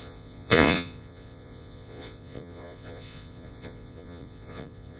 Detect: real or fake fake